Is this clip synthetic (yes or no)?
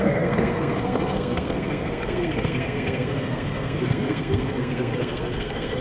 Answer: yes